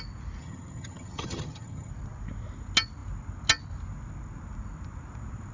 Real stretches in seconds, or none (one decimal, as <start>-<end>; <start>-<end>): 0.0-0.4; 1.9-5.5

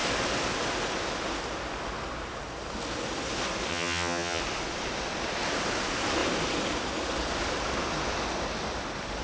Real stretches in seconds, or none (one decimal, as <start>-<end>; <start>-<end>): 0.0-3.7; 4.4-9.2

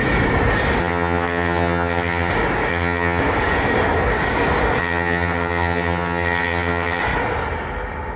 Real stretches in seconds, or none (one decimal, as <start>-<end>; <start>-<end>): 0.0-0.8; 2.3-2.7; 3.2-4.8; 7.0-8.2

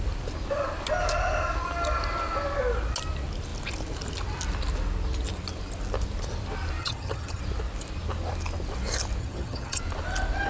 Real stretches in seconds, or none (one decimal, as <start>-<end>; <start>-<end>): 0.0-6.8; 7.4-9.2; 9.8-10.5